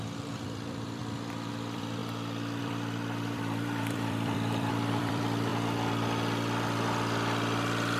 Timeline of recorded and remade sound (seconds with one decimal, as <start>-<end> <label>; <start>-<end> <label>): 0.0-1.0 remade; 1.0-1.5 recorded; 1.5-2.0 remade; 2.0-2.6 recorded; 2.6-5.5 remade; 5.5-8.0 recorded